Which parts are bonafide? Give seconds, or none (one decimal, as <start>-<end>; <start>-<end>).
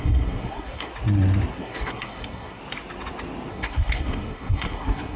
0.9-1.5; 2.6-3.5